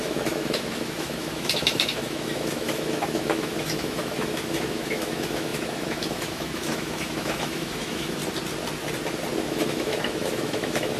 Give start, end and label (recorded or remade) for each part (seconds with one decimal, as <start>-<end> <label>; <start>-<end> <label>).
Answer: 0.0-8.2 remade; 8.2-9.4 recorded; 9.4-11.0 remade